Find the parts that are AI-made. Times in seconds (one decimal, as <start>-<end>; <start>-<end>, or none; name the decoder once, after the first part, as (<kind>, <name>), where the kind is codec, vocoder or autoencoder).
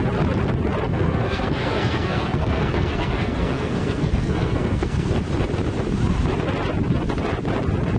0.9-5.2 (codec, SNAC)